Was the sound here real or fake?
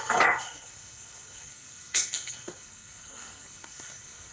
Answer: fake